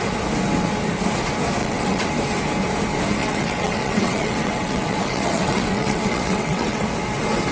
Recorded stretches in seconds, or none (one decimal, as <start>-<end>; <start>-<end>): 0.0-1.6; 2.1-3.2; 6.9-7.5